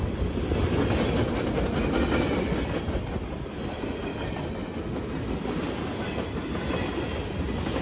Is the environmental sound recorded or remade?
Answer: recorded